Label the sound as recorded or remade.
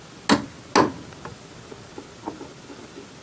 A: recorded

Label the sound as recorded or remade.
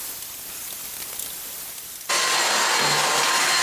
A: recorded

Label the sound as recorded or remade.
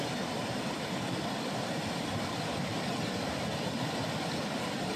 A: recorded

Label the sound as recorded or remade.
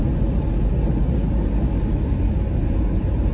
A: recorded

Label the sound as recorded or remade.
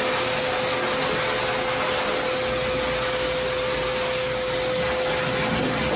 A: recorded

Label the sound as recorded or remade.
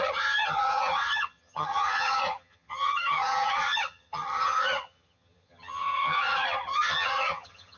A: remade